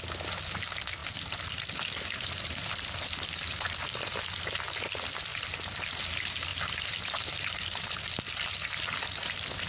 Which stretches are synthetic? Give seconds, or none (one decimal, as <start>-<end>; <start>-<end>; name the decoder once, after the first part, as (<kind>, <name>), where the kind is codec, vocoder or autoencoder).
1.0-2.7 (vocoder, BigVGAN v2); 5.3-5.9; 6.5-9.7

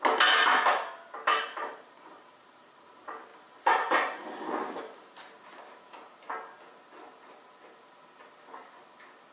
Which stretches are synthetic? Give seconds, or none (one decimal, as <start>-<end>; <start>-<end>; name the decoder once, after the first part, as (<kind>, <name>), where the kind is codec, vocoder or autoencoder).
1.3-2.9 (vocoder, BigVGAN v2); 3.3-5.1

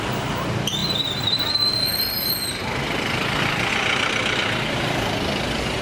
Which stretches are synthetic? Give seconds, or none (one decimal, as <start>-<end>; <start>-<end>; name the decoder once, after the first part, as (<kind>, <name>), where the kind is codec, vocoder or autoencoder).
0.8-1.5 (vocoder, BigVGAN v2); 2.6-3.7

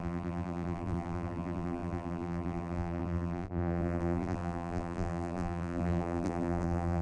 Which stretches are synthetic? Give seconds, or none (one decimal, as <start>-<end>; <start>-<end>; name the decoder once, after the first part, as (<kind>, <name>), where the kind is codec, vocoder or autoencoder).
0.0-7.0 (vocoder, BigVGAN v2)